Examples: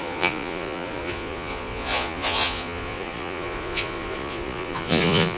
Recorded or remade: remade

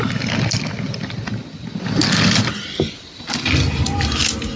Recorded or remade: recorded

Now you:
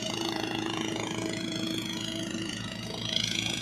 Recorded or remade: remade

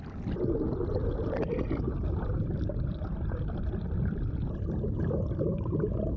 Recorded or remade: recorded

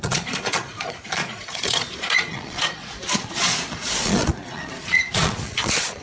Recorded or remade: remade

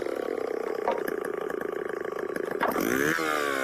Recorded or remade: recorded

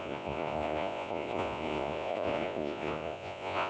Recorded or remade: remade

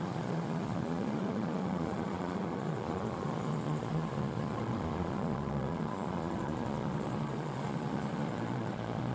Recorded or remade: remade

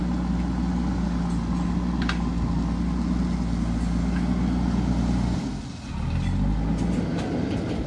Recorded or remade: recorded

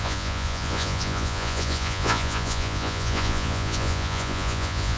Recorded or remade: remade